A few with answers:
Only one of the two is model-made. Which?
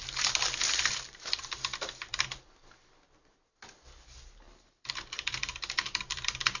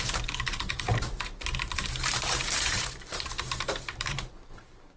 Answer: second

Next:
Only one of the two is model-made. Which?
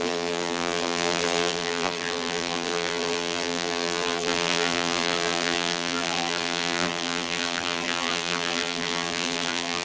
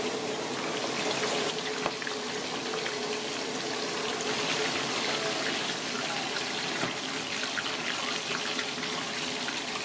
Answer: first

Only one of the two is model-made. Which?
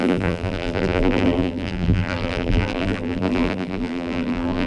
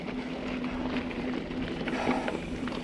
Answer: first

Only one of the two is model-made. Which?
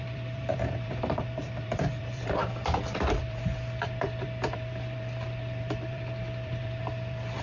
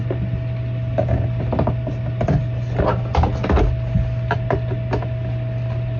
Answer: first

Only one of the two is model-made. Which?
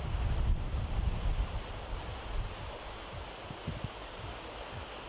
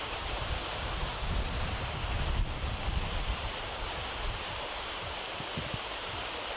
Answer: second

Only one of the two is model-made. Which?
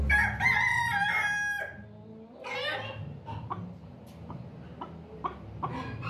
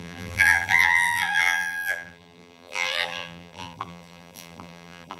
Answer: second